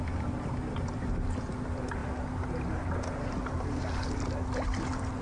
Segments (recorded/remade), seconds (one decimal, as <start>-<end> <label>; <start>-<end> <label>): 0.0-5.2 recorded